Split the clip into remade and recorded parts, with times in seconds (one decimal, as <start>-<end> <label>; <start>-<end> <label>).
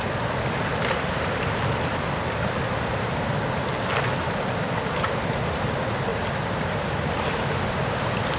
0.0-8.4 recorded